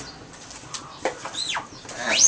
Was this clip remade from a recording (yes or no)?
no